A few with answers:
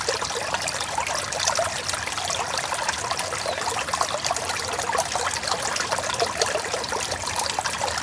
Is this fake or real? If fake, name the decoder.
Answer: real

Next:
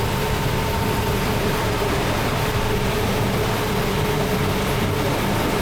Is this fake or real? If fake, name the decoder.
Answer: real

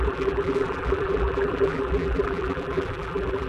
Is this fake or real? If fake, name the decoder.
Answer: fake, vocoder, BigVGAN v2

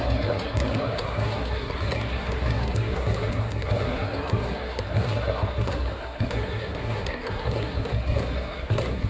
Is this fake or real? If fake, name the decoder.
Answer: fake, codec, SNAC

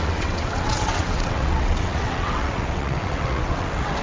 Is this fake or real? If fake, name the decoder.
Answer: fake, vocoder, WaveNeXt